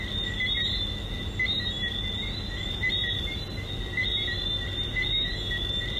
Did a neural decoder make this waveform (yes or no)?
no